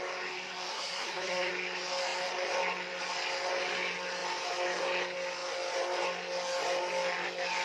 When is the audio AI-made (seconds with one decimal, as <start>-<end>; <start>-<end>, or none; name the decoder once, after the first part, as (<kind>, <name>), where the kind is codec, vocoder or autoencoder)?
0.7-1.5 (codec, SNAC)